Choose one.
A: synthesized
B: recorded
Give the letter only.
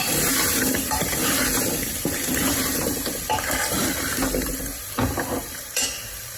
A